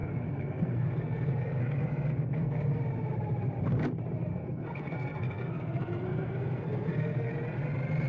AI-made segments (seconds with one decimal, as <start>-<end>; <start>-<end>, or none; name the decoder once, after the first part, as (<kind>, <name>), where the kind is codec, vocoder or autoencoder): 0.0-2.8 (codec, SNAC); 4.3-7.3